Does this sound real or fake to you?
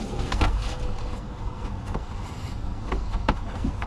fake